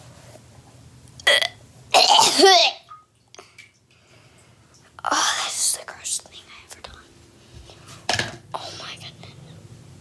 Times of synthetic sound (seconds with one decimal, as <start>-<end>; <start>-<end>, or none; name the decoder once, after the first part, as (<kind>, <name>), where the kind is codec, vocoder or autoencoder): none